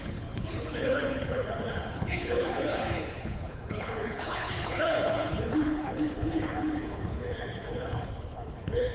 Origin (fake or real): fake